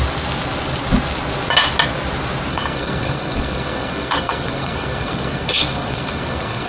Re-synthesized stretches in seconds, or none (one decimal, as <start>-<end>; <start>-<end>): 2.5-6.7